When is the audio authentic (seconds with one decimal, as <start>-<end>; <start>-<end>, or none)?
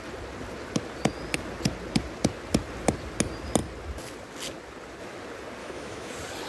0.0-5.6; 6.1-6.5